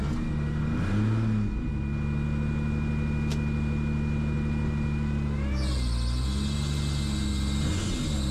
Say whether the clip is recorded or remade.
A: recorded